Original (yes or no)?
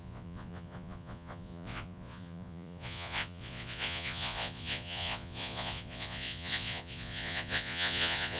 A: no